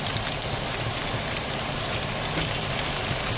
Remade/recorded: recorded